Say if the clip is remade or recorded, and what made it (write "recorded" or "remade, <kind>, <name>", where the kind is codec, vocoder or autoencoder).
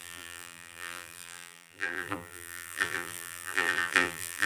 remade, vocoder, BigVGAN v2